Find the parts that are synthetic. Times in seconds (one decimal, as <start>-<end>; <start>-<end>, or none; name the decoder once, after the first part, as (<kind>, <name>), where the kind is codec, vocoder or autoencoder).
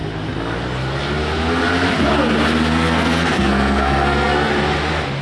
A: 2.7-4.5 (codec, SNAC)